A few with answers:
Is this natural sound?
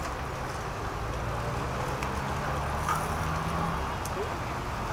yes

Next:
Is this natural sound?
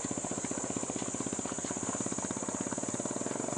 yes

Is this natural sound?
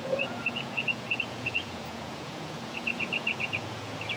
no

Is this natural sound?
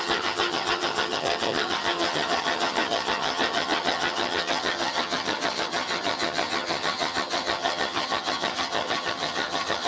no